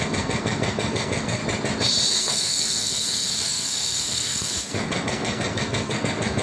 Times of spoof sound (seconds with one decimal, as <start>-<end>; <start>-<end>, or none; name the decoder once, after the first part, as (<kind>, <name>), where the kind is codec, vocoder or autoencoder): 0.0-1.4 (codec, SNAC); 2.1-6.4